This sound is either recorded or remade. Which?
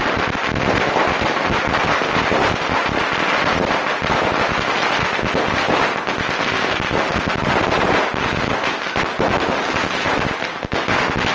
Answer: recorded